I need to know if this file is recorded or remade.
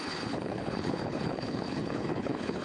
remade